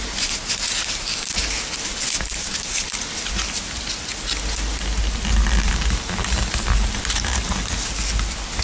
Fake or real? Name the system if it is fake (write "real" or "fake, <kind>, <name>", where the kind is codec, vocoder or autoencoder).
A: real